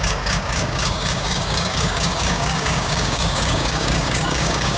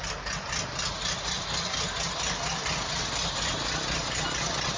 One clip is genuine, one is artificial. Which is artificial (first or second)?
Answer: first